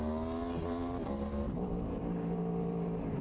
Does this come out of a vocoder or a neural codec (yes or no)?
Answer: yes